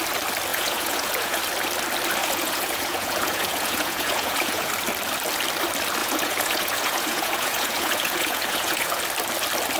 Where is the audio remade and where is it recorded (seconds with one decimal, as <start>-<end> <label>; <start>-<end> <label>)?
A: 0.0-0.5 recorded; 0.5-1.4 remade; 1.4-2.2 recorded; 2.2-4.7 remade; 4.7-6.0 recorded; 6.0-9.0 remade; 9.0-9.8 recorded